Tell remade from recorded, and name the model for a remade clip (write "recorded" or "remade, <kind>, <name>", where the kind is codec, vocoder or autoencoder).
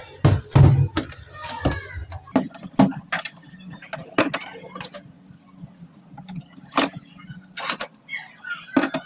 recorded